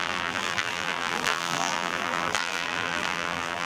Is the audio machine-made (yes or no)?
yes